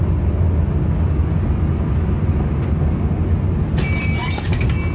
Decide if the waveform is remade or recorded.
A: recorded